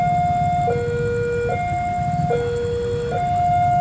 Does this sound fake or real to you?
real